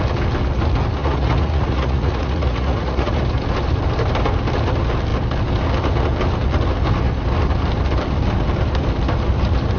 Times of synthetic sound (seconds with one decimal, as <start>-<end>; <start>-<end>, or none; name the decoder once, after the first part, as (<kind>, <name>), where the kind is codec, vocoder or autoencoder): 1.0-3.2 (vocoder, Vocos)

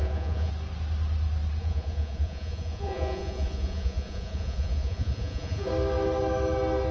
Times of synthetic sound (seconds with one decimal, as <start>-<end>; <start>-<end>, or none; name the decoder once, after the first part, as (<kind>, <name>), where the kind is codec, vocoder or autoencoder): 0.0-0.5 (vocoder, Vocos); 1.6-5.7